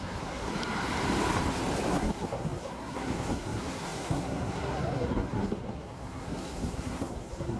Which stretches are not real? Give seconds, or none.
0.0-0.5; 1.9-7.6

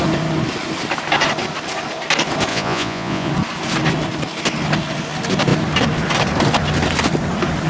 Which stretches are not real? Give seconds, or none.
2.5-3.3

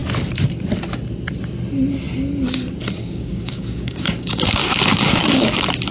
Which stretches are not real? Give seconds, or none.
3.0-5.5